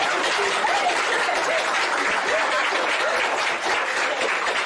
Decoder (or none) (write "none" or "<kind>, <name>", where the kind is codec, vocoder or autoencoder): vocoder, BigVGAN v2